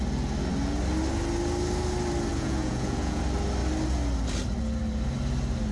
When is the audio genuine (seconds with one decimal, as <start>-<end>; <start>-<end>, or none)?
0.0-2.3; 3.2-5.7